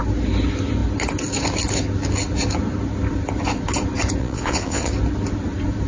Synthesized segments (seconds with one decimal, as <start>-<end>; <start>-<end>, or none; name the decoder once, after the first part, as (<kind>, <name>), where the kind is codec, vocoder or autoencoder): 4.2-4.9 (vocoder, Vocos)